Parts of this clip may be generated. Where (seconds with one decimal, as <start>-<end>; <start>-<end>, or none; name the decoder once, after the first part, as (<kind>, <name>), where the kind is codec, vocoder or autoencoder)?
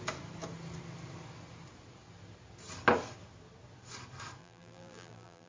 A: 4.4-5.5 (vocoder, BigVGAN v2)